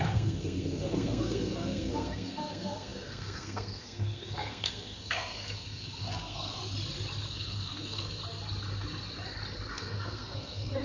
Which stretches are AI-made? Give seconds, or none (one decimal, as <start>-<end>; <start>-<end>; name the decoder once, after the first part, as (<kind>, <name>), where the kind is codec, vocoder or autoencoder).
0.0-6.6 (codec, SNAC); 7.3-8.2; 9.7-10.8